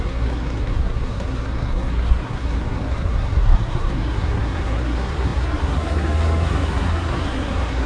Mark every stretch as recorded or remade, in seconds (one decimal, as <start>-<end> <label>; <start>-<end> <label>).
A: 0.0-7.9 remade